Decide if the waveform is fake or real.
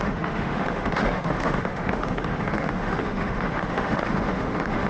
fake